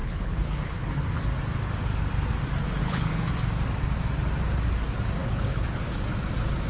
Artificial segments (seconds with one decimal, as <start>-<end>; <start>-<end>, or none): 0.0-1.0; 2.8-3.3; 5.2-6.0